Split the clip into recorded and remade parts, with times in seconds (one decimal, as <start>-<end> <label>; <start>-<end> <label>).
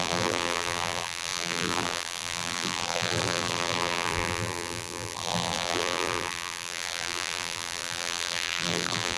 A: 0.0-9.2 remade